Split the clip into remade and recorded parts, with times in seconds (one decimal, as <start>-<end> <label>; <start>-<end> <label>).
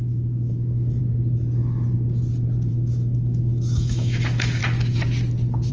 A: 0.0-1.0 remade; 1.0-2.7 recorded; 2.7-4.6 remade; 4.6-5.7 recorded